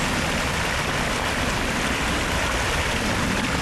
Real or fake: real